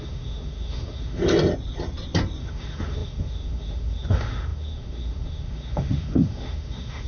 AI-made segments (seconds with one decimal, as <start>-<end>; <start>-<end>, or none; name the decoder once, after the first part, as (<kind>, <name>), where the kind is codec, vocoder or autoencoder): 0.0-1.2 (autoencoder, DAC-VAE); 2.4-7.1